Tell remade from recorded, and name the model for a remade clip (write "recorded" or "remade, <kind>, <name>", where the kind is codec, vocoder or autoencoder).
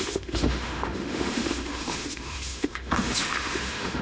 remade, autoencoder, DAC-VAE